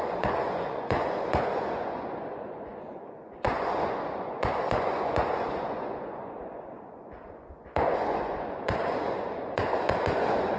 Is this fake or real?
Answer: fake